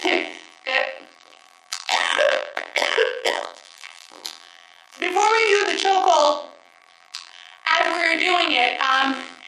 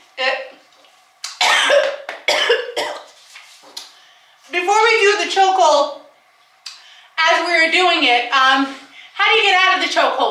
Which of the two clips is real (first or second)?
second